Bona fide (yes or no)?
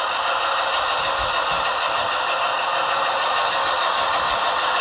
yes